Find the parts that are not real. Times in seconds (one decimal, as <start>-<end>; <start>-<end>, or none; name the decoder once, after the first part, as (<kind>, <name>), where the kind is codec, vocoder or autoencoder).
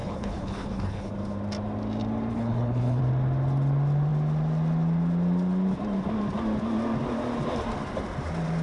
0.0-1.1 (codec, HILCodec); 2.3-3.0